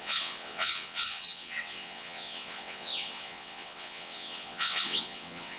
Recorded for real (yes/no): no